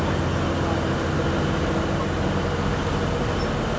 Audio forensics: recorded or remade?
recorded